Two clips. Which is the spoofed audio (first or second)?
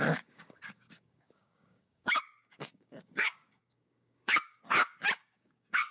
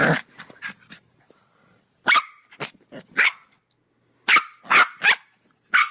first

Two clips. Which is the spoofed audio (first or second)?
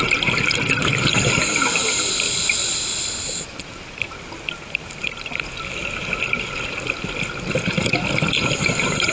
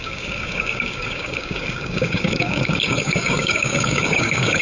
second